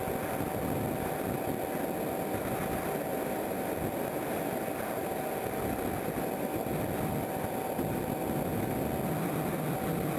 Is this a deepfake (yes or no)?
no